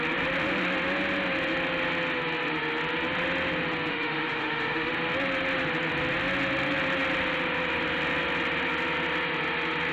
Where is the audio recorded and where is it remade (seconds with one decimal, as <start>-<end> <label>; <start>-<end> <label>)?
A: 0.0-3.9 recorded; 3.9-4.9 remade; 4.9-9.9 recorded